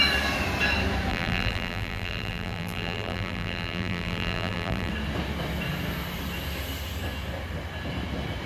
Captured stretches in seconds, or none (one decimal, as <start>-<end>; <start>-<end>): 0.0-1.1; 4.9-8.5

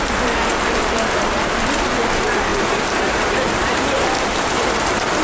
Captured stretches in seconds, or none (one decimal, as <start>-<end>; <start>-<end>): 0.0-2.5; 4.7-5.2